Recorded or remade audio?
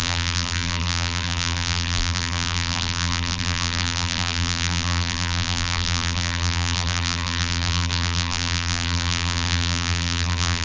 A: remade